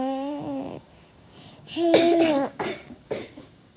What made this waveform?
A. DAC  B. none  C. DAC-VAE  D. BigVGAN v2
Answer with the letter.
A